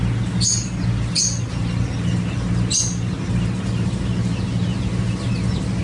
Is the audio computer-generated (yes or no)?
no